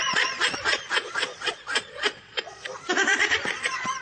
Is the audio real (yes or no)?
no